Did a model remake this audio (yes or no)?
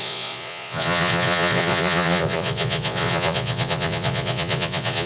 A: yes